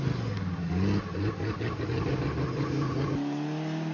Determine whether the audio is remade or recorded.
recorded